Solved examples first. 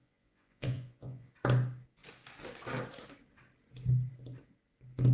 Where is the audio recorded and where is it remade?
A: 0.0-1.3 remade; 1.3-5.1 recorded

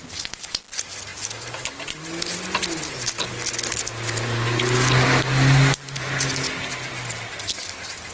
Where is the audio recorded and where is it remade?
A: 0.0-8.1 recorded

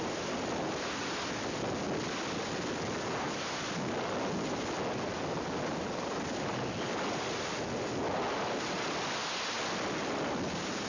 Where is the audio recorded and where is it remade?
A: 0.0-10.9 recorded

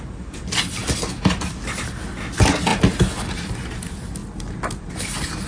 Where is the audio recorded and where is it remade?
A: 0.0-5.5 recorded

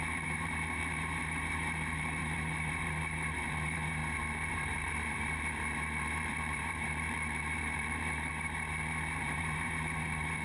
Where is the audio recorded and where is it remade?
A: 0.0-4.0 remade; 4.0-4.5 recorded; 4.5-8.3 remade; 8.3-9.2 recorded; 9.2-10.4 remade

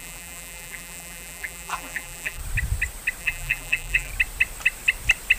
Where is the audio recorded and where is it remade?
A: 0.0-2.4 remade; 2.4-3.2 recorded; 3.2-4.1 remade; 4.1-5.4 recorded

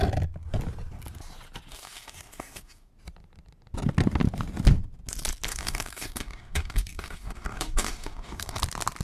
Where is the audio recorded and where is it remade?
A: 0.0-1.7 recorded; 1.7-2.9 remade; 2.9-5.5 recorded; 5.5-8.6 remade; 8.6-9.0 recorded